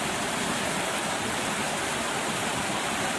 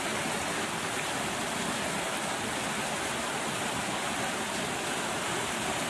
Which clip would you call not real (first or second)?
first